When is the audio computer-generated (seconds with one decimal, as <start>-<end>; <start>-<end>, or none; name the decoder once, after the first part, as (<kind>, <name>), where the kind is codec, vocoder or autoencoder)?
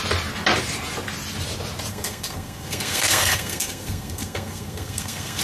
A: 1.9-5.4 (codec, SNAC)